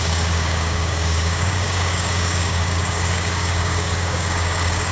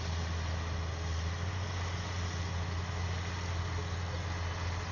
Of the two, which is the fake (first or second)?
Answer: first